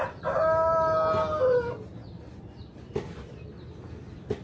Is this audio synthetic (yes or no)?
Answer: no